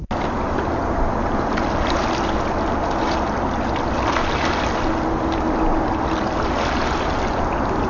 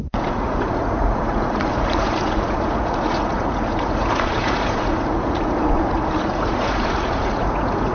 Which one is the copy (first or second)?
second